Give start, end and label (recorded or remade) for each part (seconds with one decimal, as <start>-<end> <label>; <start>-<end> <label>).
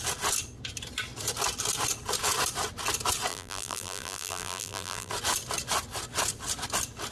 0.0-3.3 recorded; 3.3-5.1 remade; 5.1-7.1 recorded